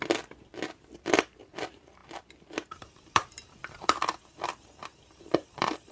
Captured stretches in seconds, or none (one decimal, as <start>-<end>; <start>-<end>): none